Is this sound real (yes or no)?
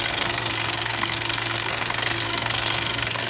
no